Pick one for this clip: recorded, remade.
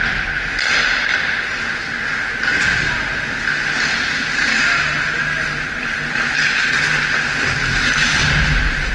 recorded